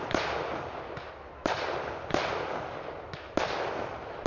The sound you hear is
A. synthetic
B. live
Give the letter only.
B